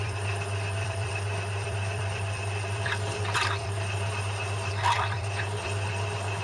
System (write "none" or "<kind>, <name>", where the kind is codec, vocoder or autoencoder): vocoder, BigVGAN v2